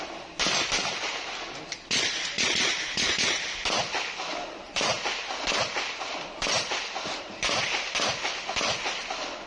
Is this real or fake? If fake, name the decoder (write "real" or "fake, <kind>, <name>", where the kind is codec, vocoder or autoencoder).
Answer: real